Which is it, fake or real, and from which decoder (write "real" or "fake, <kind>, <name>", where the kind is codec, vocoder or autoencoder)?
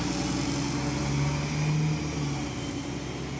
real